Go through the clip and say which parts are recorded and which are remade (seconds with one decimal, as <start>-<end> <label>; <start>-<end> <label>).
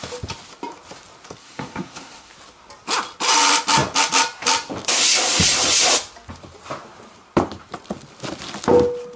0.0-1.4 recorded; 1.4-2.3 remade; 2.3-9.2 recorded